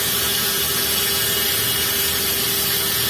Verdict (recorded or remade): recorded